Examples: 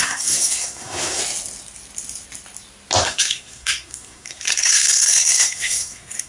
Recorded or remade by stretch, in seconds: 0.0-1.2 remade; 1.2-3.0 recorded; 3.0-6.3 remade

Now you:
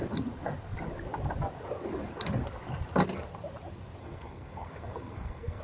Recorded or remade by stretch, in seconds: 0.0-4.0 recorded; 4.0-5.6 remade

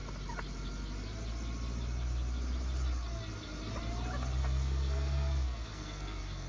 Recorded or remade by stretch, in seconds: 0.0-4.4 recorded; 4.4-6.5 remade

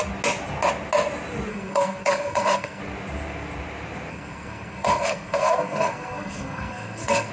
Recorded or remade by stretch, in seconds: 0.0-1.5 recorded; 1.5-2.8 remade; 2.8-4.1 recorded; 4.1-7.3 remade

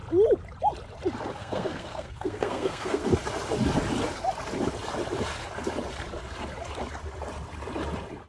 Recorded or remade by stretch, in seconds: 0.0-1.4 recorded; 1.4-3.1 remade; 3.1-8.3 recorded

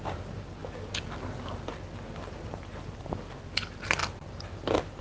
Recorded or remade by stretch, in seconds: 0.0-5.0 recorded

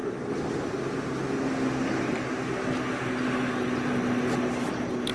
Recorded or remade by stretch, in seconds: 0.0-5.1 recorded

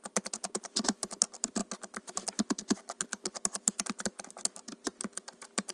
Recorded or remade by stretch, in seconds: 0.0-5.7 recorded